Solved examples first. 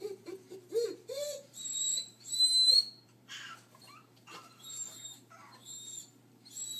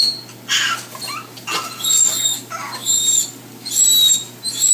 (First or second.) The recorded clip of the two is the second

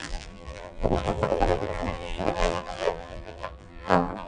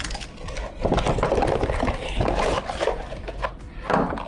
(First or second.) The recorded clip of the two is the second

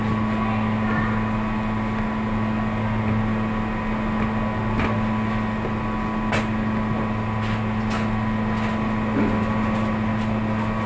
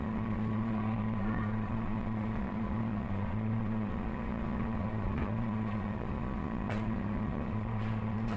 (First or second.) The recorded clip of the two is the first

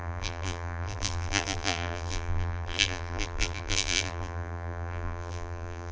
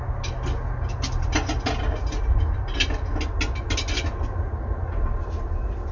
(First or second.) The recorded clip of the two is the second